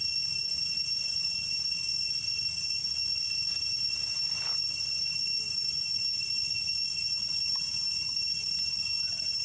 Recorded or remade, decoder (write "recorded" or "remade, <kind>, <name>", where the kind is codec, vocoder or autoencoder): recorded